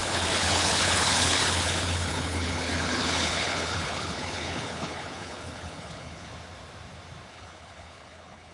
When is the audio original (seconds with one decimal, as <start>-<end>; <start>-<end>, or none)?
6.3-7.3